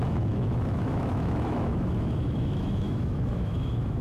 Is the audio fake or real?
fake